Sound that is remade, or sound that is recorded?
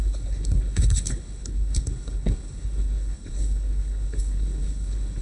remade